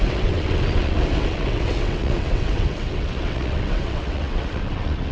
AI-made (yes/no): yes